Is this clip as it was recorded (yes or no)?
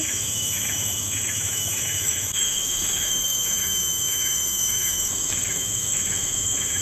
no